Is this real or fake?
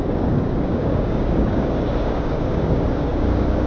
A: fake